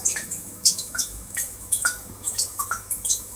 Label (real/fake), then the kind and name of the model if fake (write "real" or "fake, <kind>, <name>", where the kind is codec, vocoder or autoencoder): fake, autoencoder, DAC-VAE